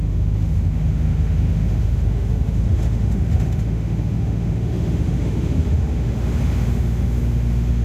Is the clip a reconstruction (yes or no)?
yes